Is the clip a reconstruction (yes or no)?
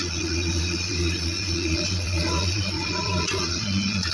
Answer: yes